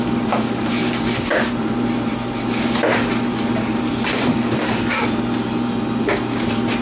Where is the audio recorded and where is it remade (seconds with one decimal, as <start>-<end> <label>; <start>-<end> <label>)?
0.0-6.8 recorded